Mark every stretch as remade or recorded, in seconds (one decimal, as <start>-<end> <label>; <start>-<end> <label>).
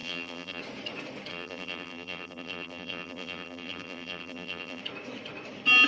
0.0-0.6 remade; 0.6-1.3 recorded; 1.3-4.8 remade; 4.8-5.9 recorded